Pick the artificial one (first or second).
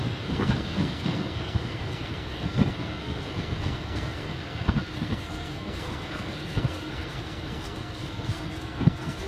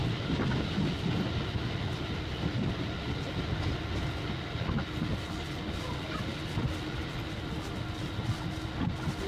first